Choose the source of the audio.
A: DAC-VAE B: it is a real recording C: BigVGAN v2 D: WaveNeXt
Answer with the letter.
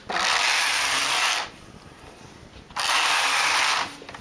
B